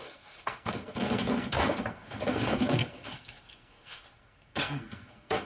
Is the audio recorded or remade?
remade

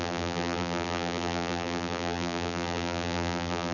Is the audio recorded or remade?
remade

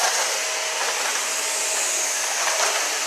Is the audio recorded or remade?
recorded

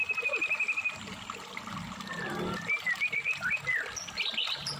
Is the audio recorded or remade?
recorded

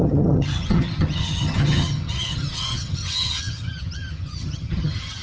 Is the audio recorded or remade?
remade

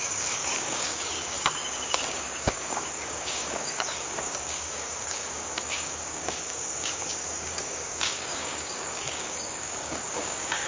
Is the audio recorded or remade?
remade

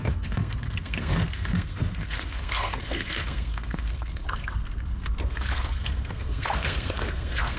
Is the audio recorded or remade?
remade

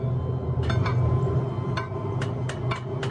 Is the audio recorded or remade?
recorded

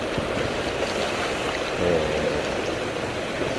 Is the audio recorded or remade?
recorded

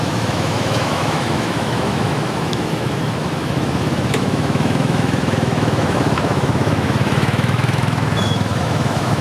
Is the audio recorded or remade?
remade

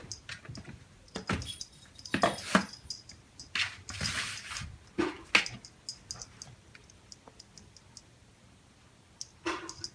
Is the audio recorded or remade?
recorded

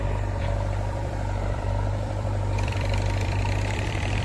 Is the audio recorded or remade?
remade